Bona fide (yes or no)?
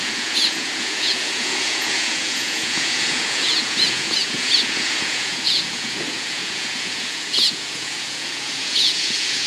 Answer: no